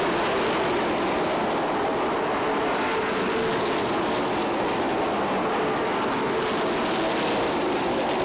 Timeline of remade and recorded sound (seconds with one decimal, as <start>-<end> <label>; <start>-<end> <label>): 0.0-8.2 recorded